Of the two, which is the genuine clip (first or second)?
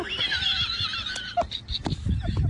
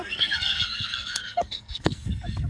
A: first